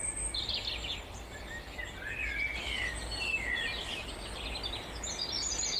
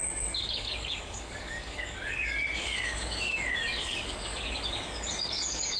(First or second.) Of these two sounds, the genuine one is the first